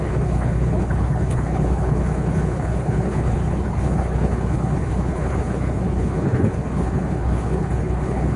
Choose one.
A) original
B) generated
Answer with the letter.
B